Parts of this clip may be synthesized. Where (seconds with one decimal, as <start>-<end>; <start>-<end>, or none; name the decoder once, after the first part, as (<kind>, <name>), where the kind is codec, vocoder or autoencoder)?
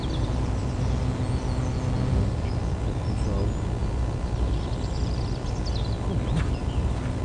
none